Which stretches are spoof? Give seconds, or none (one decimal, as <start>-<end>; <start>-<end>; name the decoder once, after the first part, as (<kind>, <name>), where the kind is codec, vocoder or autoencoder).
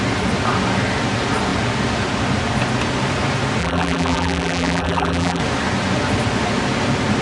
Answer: 3.6-5.4 (vocoder, BigVGAN v2)